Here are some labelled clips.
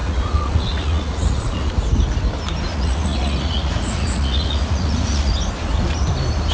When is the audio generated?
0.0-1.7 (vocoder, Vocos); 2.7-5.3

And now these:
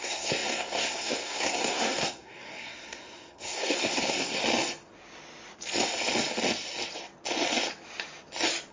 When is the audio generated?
0.0-4.4 (codec, SNAC)

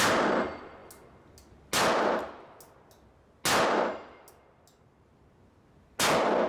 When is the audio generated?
none

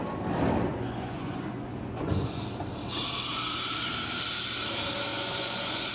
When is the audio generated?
0.7-2.4 (vocoder, Vocos); 5.1-5.9

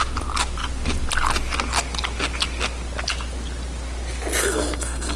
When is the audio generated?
4.4-5.2 (codec, SNAC)